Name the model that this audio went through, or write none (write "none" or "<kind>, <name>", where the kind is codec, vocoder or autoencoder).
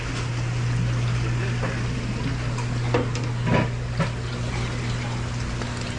none